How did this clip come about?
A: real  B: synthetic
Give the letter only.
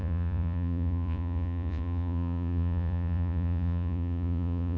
B